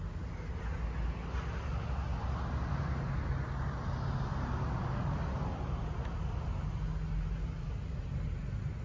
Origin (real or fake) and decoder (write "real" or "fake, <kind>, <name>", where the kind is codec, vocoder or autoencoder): real